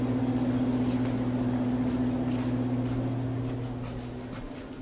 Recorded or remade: recorded